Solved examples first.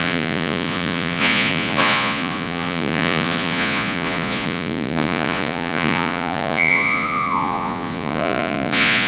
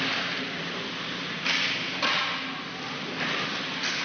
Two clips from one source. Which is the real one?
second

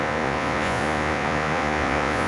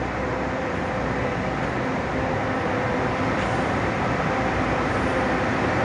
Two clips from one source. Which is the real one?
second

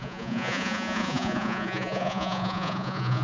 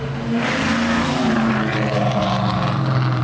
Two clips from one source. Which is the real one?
second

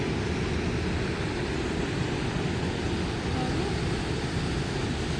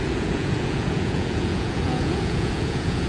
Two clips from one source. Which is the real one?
first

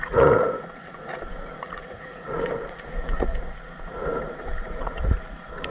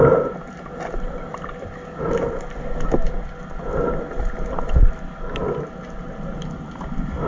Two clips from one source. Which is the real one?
second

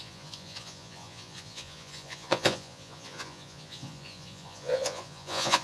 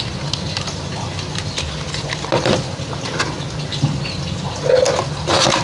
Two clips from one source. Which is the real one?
second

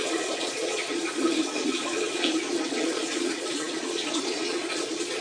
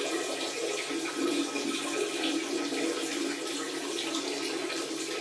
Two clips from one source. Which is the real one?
second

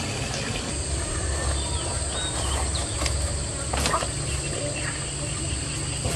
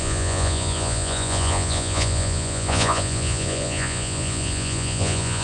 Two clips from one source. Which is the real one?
first